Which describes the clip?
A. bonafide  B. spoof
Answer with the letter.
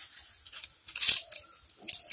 A